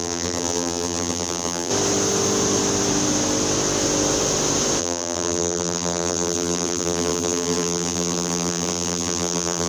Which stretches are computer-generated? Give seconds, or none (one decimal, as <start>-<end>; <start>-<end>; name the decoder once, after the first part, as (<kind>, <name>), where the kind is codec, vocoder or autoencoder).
0.0-1.7 (vocoder, BigVGAN v2); 4.8-9.7